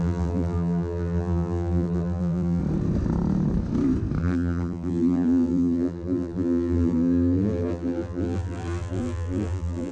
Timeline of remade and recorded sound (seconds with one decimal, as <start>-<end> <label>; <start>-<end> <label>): 0.0-2.6 remade; 2.6-4.2 recorded; 4.2-9.9 remade